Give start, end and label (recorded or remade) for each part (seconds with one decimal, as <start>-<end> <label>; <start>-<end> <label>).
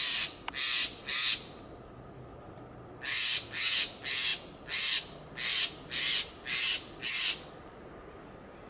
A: 0.0-8.7 recorded